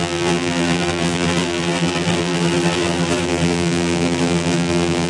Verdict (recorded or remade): remade